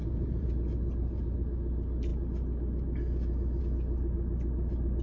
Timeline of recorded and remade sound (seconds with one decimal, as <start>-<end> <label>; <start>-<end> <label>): 0.0-0.5 remade; 0.5-5.0 recorded